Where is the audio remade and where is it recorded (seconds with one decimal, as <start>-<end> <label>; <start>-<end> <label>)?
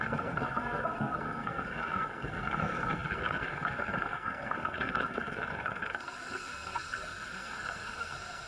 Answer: 0.0-8.5 remade